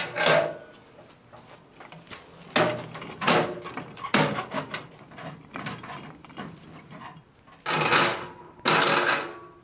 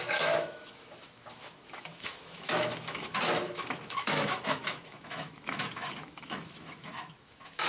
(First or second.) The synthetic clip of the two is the second